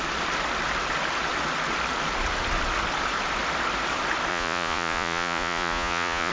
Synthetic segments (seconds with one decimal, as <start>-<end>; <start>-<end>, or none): 4.3-6.3